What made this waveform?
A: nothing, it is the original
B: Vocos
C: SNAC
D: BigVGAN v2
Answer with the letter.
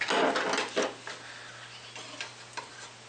A